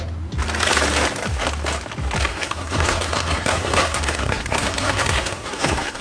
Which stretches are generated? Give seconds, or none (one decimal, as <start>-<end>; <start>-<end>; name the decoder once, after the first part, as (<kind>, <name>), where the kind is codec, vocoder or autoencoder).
2.3-6.0 (codec, SNAC)